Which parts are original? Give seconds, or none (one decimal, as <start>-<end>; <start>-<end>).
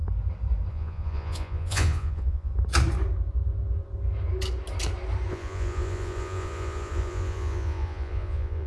0.0-0.7; 2.5-5.3